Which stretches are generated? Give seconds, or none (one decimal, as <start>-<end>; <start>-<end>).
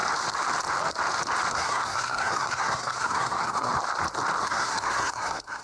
1.5-3.7; 4.4-5.6